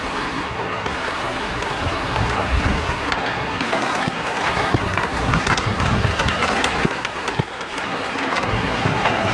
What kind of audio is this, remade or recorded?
remade